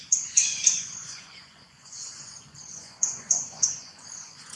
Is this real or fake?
fake